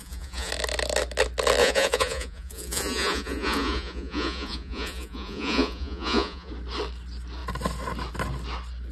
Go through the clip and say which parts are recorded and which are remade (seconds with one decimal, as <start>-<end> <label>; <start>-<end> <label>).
0.0-0.5 remade; 0.5-1.6 recorded; 1.6-6.5 remade; 6.5-8.9 recorded